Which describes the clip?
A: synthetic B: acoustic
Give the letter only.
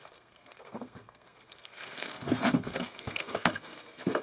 A